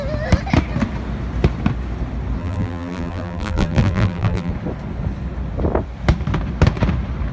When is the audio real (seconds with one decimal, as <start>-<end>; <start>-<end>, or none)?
0.0-2.4; 4.5-7.3